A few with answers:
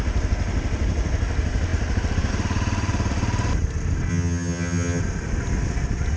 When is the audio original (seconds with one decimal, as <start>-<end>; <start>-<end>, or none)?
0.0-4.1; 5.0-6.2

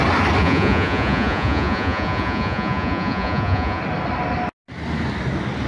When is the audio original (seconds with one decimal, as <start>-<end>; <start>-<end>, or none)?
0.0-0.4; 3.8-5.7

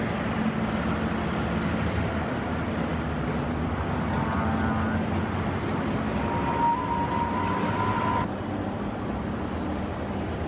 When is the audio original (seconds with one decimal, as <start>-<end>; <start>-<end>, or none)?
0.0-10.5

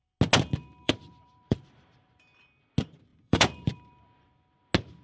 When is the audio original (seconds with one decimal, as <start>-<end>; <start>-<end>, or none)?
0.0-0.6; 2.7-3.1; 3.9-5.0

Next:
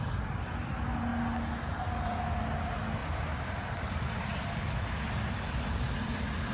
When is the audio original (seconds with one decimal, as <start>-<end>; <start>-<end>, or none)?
0.0-6.5

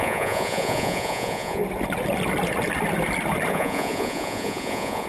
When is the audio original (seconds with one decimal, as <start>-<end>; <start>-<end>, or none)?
1.6-3.5